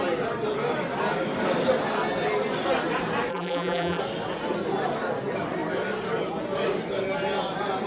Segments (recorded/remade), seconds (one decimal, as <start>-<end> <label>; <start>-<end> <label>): 0.0-3.3 recorded; 3.3-4.0 remade; 4.0-7.9 recorded

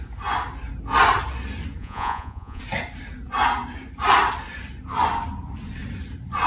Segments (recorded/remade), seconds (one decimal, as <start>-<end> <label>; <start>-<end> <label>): 0.0-1.8 recorded; 1.8-2.6 remade; 2.6-6.5 recorded